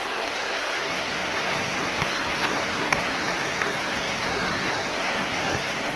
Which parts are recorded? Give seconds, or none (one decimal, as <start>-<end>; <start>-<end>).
none